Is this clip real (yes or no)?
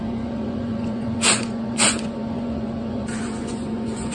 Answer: no